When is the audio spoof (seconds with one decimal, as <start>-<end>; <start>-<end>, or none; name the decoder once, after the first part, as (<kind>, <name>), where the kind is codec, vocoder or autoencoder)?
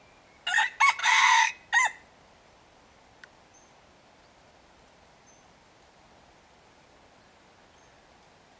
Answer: 1.0-1.5 (codec, SNAC)